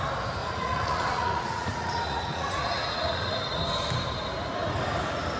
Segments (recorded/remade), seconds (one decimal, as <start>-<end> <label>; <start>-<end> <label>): 0.0-0.4 recorded; 0.4-3.6 remade; 3.6-5.4 recorded